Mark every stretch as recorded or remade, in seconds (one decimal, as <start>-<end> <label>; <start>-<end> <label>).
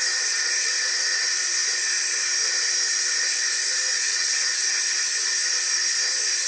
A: 0.0-3.9 recorded; 3.9-4.6 remade; 4.6-6.5 recorded